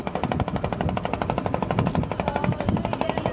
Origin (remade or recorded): recorded